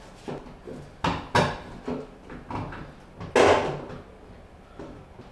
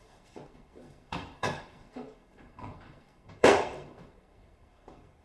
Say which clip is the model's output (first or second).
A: second